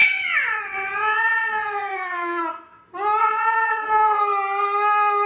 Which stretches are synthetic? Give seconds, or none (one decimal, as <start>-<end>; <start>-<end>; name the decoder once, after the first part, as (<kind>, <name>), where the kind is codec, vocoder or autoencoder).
0.0-2.4 (vocoder, WaveNeXt); 3.2-4.2